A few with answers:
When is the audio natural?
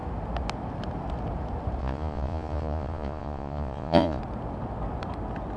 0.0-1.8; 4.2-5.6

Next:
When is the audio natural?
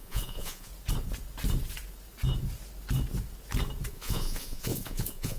0.7-3.9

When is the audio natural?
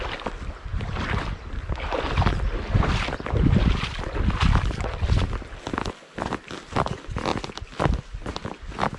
0.0-0.7; 1.3-9.0